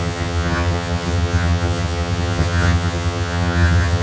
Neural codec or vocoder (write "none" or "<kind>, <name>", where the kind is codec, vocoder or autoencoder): vocoder, HiFi-GAN